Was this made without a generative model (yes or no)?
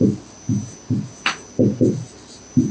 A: yes